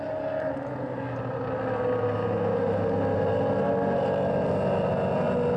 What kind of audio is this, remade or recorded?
recorded